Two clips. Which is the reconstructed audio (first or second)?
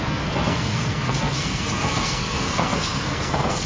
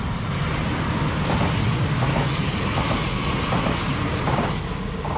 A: first